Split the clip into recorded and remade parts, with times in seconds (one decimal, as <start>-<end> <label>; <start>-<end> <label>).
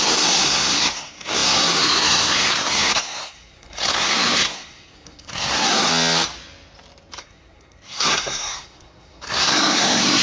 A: 0.0-5.9 remade; 5.9-7.2 recorded; 7.2-10.2 remade